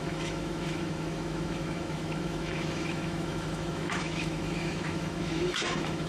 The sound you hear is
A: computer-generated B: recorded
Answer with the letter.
A